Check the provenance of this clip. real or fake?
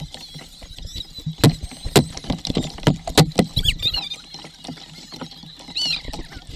real